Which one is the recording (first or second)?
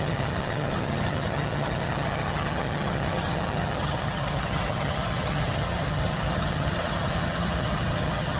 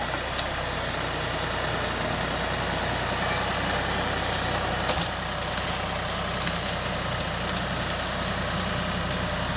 second